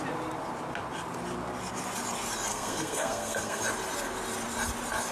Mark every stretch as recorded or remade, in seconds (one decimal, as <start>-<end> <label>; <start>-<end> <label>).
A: 0.0-2.5 recorded; 2.5-3.6 remade; 3.6-5.1 recorded